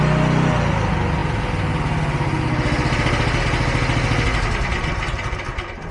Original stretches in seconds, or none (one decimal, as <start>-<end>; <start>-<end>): 0.0-5.9